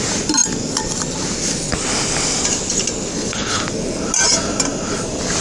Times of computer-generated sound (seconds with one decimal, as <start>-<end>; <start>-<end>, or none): 3.1-3.6